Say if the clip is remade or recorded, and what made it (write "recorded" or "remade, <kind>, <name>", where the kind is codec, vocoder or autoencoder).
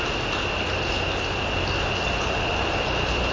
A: recorded